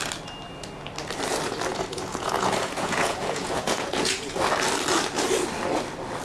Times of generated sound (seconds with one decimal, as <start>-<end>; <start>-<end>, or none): 1.7-4.3